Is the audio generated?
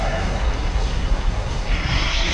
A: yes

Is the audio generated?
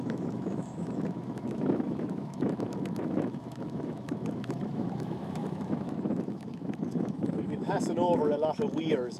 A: yes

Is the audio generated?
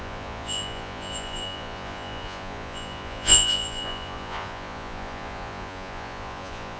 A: yes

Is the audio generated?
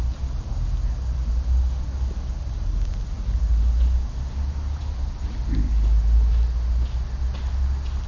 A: no